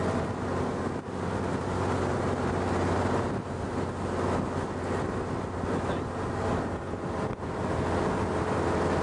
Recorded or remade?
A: recorded